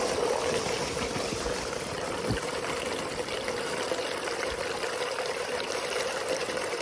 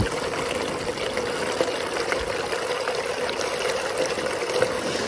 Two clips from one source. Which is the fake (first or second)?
first